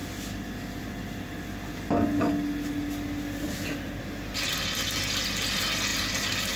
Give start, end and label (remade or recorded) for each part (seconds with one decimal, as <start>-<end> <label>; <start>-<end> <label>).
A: 0.0-5.9 recorded; 5.9-6.6 remade